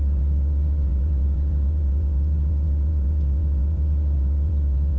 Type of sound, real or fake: fake